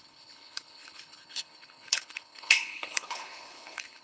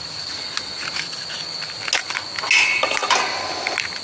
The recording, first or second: second